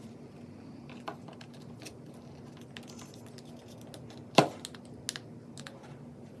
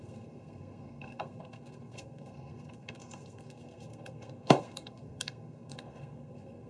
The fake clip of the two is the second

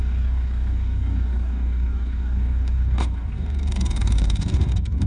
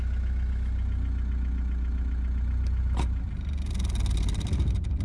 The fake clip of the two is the first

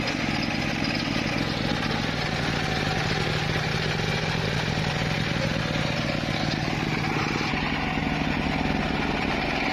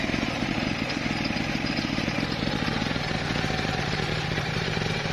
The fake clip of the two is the second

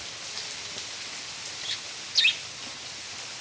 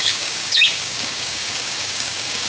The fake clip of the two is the second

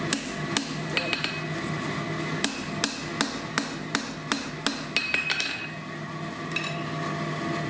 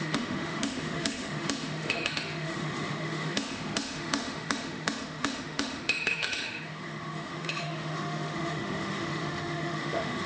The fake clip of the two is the second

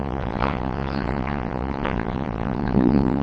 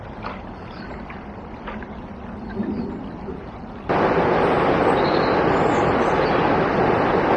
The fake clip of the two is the first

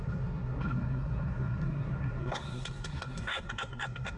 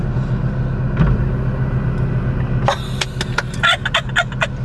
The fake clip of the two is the first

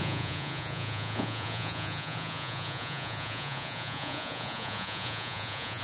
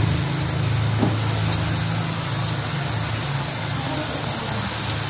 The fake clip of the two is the first